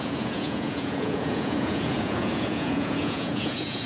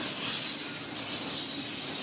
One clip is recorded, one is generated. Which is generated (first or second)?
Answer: first